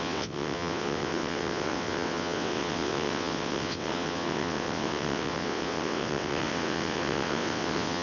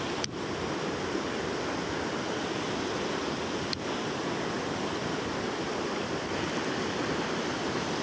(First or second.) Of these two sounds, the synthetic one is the first